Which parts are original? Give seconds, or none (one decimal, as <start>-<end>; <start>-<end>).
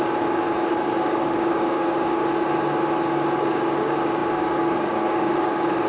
2.2-3.5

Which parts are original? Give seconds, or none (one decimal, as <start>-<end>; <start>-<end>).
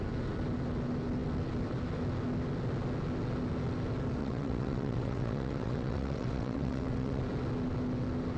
0.0-4.2; 7.2-8.4